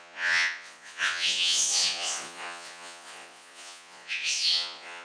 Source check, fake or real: fake